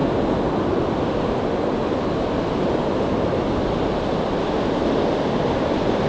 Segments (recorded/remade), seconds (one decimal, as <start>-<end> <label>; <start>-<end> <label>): 0.0-6.1 recorded